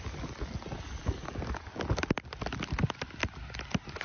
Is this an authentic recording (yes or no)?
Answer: yes